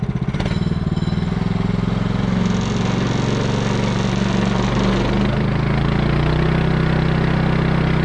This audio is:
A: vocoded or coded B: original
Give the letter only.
B